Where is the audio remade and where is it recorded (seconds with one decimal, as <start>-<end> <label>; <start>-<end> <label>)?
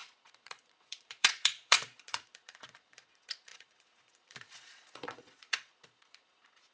0.0-6.7 remade